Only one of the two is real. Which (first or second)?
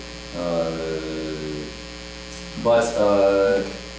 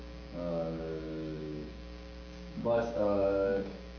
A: first